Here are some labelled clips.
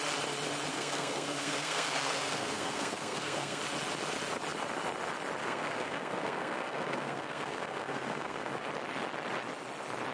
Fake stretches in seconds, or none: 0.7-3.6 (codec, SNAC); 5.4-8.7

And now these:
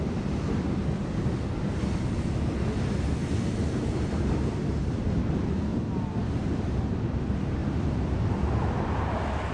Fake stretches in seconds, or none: 3.2-4.9 (vocoder, BigVGAN v2); 5.7-6.7; 7.6-8.7

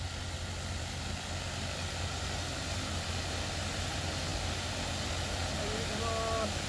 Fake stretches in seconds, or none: none

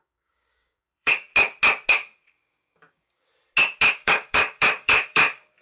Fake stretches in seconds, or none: 0.0-1.3 (codec, DAC); 1.9-3.3; 3.9-5.6

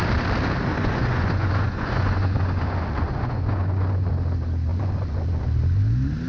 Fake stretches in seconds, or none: 0.7-4.1 (vocoder, Vocos); 4.7-5.4

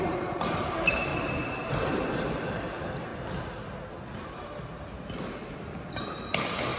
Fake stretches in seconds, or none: none

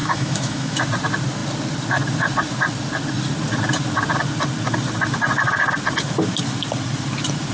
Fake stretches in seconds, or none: 0.0-0.8 (autoencoder, DAC-VAE)

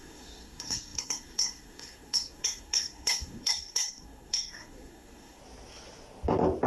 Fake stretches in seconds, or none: 0.0-5.4 (codec, SNAC)